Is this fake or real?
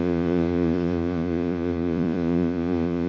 fake